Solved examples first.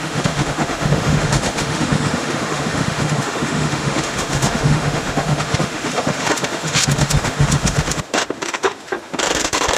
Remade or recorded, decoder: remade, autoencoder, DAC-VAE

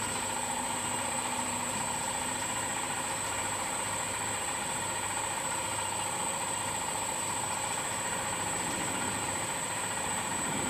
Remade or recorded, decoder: remade, vocoder, BigVGAN v2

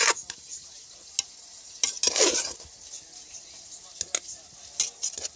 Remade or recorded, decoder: recorded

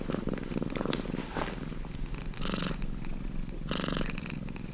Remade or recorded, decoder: recorded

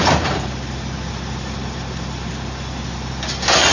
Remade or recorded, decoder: recorded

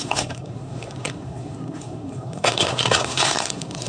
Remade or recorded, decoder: remade, codec, SNAC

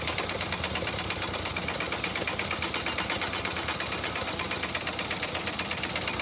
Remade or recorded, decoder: recorded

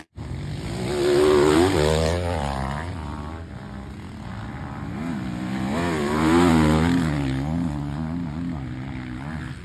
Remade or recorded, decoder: recorded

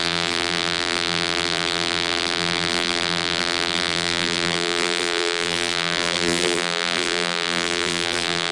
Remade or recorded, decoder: remade, vocoder, BigVGAN v2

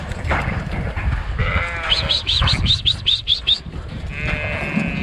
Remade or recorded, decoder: recorded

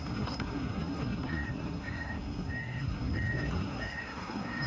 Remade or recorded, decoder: remade, codec, SNAC